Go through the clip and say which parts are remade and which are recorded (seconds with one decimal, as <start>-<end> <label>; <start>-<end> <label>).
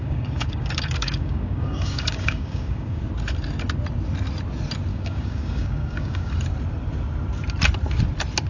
0.0-3.0 remade; 3.0-4.9 recorded; 4.9-6.3 remade; 6.3-8.5 recorded